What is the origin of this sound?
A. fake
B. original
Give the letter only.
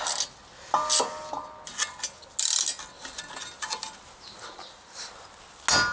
B